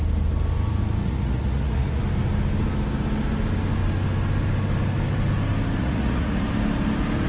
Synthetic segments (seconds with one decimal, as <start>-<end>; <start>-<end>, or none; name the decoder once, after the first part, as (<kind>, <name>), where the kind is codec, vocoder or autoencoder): 1.0-2.0 (vocoder, Vocos); 5.8-6.4